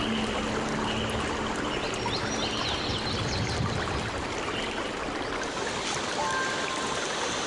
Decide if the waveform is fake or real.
real